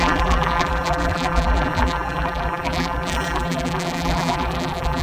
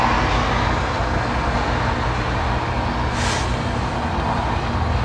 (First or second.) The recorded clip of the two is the second